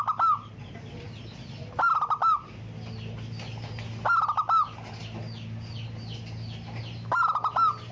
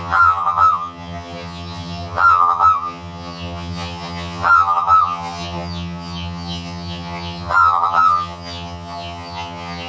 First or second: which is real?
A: first